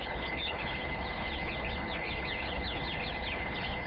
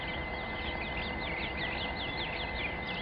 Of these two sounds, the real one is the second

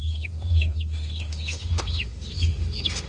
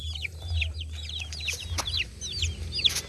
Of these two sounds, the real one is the second